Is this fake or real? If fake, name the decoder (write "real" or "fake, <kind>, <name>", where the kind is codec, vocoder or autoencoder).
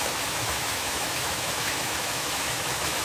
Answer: fake, autoencoder, DAC-VAE